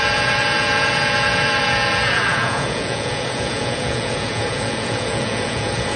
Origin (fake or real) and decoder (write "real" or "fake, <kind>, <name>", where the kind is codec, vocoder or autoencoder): fake, vocoder, Vocos